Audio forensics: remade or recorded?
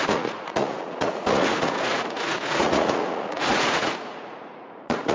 remade